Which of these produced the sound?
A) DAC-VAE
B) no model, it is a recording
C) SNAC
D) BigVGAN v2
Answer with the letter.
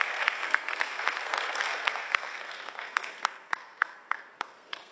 C